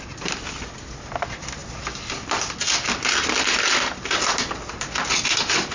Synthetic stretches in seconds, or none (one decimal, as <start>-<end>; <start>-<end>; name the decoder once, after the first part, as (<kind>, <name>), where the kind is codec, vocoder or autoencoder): none